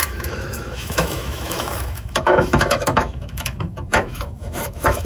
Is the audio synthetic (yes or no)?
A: yes